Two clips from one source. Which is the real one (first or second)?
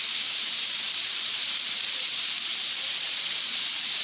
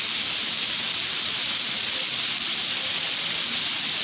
second